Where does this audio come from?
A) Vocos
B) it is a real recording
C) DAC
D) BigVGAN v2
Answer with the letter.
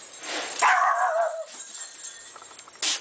B